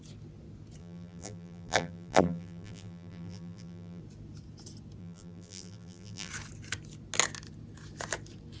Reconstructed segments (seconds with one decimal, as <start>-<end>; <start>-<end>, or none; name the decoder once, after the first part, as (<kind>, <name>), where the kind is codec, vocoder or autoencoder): 0.8-4.0 (vocoder, BigVGAN v2); 5.0-6.3